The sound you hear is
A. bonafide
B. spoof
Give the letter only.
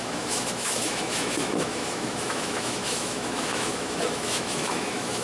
B